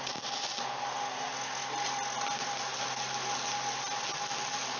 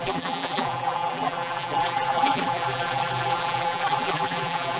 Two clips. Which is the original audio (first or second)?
first